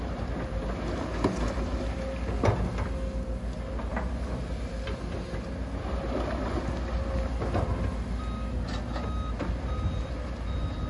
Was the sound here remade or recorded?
recorded